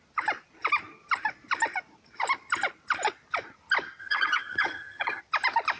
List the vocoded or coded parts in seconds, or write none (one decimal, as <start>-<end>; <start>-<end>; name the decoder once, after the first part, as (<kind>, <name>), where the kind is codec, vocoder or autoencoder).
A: 4.0-5.2 (vocoder, HiFi-GAN)